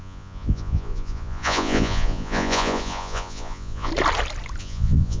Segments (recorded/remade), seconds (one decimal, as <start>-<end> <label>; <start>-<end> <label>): 0.0-3.9 remade; 3.9-4.6 recorded; 4.6-5.2 remade